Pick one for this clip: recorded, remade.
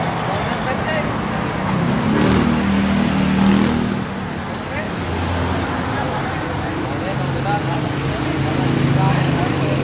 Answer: recorded